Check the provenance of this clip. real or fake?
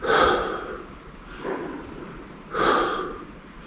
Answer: real